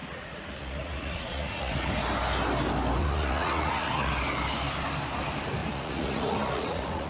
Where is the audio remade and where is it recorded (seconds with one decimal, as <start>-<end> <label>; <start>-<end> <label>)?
0.0-1.9 remade; 1.9-3.0 recorded; 3.0-4.1 remade; 4.1-5.6 recorded; 5.6-7.1 remade